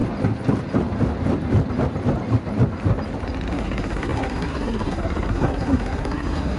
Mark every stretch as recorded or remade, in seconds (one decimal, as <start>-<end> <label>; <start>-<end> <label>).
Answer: 0.0-3.5 recorded; 3.5-6.6 remade